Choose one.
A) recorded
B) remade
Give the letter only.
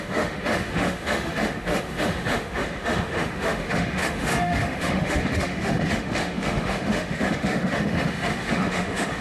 B